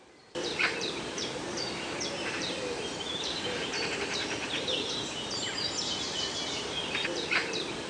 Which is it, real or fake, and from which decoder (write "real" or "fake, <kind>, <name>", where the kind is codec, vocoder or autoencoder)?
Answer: fake, vocoder, BigVGAN v2